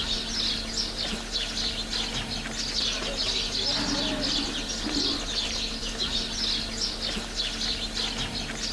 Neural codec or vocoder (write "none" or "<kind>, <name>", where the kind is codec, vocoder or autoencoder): none